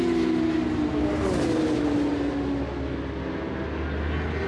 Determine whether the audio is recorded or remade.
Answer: recorded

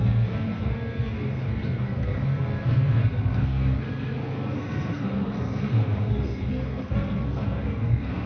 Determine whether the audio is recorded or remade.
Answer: remade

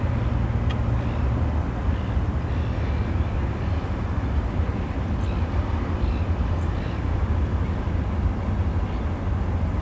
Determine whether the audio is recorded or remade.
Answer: recorded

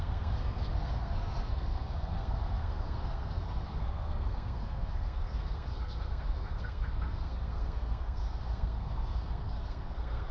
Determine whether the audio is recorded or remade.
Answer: remade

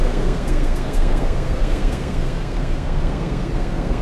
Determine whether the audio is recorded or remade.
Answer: remade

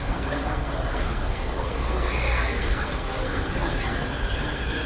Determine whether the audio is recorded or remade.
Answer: remade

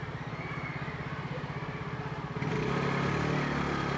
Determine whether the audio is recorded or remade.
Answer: recorded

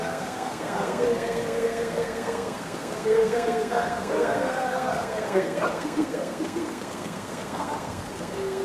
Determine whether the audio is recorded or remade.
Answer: remade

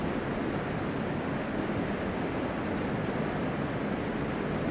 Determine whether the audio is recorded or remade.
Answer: recorded